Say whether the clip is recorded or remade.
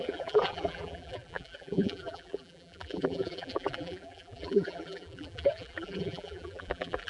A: remade